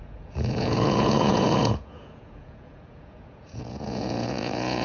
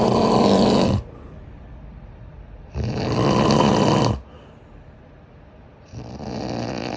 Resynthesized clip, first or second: first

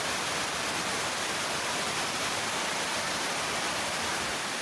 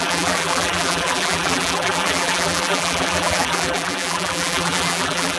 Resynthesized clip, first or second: second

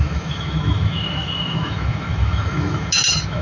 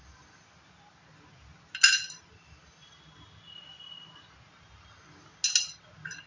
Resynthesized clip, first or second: first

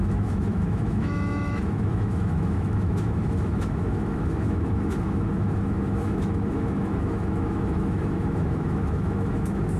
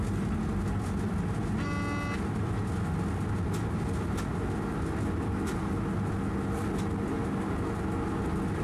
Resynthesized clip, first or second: first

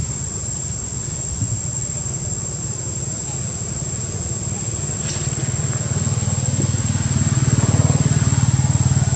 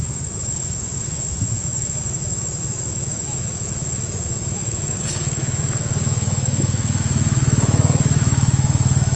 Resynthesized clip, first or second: second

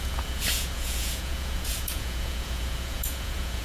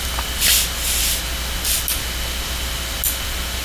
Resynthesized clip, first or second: first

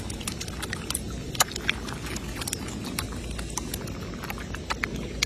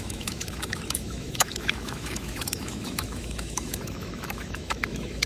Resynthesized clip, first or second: second